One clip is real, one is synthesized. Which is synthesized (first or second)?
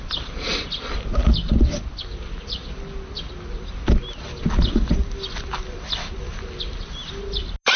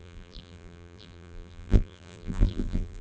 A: second